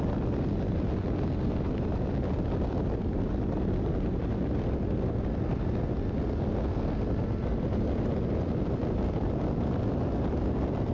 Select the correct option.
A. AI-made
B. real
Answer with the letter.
B